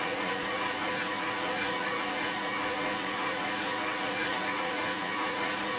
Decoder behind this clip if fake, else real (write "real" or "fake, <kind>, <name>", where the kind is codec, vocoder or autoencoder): fake, vocoder, Vocos